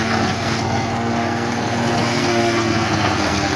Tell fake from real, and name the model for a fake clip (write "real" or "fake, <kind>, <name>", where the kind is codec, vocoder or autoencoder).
fake, codec, SNAC